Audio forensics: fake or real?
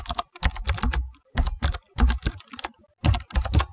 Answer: real